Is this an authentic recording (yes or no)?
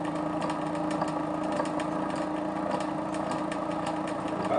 yes